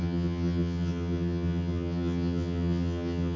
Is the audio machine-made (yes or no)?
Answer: yes